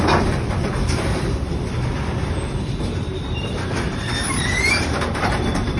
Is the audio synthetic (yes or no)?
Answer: yes